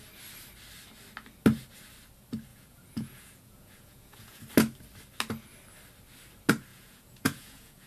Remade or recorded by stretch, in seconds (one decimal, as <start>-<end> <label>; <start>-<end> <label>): 0.0-2.5 recorded; 2.5-4.4 remade; 4.4-6.7 recorded; 6.7-7.9 remade